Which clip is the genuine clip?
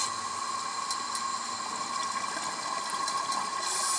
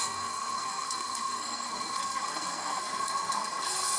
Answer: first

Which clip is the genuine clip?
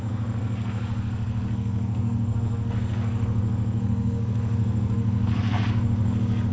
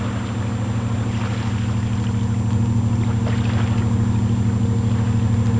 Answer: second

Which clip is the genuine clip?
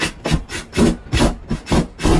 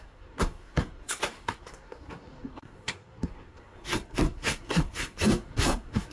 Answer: first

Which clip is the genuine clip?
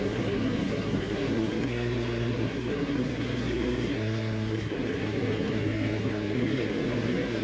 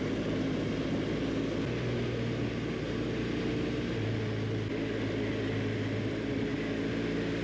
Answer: second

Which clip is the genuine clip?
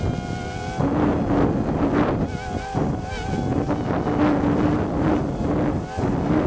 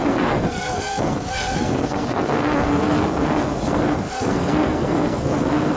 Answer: first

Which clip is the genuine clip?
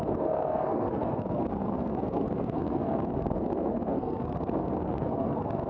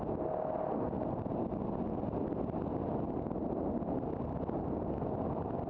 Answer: second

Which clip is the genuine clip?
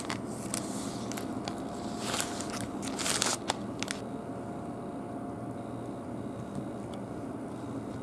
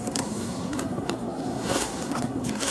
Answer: first